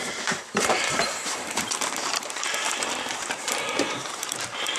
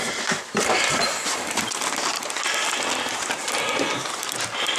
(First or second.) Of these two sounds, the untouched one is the second